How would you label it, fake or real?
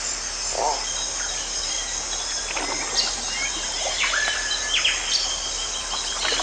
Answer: real